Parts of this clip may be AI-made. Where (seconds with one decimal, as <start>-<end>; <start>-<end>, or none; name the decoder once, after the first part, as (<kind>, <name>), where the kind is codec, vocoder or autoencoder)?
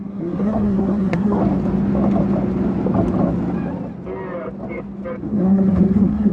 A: 0.0-1.4 (codec, SNAC); 5.2-6.3